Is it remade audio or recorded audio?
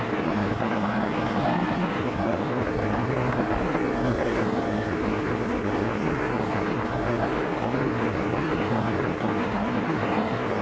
remade